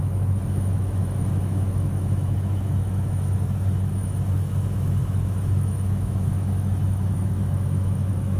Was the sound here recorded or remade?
remade